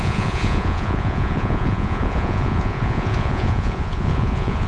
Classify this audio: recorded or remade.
remade